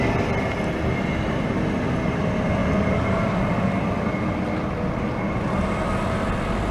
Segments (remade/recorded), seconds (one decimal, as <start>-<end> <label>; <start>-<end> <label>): 0.0-6.7 recorded